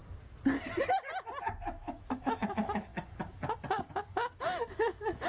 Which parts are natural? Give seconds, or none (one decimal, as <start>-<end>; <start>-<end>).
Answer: 0.0-1.6; 2.9-4.4